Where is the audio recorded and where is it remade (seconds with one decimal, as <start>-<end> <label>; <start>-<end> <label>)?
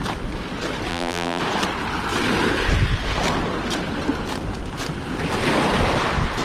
0.0-0.9 recorded; 0.9-1.4 remade; 1.4-6.4 recorded